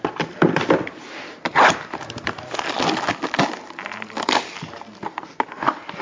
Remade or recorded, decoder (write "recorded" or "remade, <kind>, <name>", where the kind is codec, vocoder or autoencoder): recorded